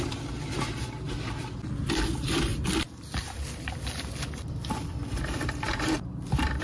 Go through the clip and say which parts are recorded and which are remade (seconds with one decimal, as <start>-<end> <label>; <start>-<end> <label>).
0.0-2.5 recorded; 2.5-6.6 remade